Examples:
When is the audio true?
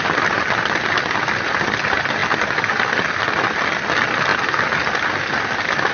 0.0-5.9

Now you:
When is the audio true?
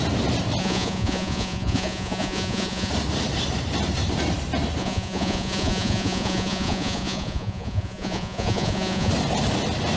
0.0-0.6; 2.9-4.8; 9.1-10.0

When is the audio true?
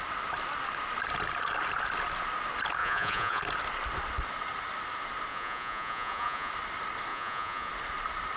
0.0-2.8; 3.4-5.3; 6.5-7.1; 7.7-8.4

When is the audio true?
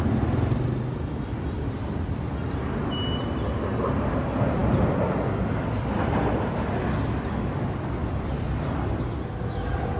0.0-10.0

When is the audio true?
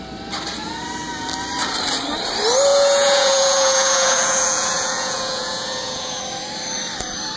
0.0-2.7; 6.2-7.4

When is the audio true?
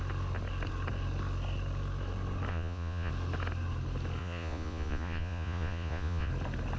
0.0-2.5; 3.1-4.2; 6.3-6.8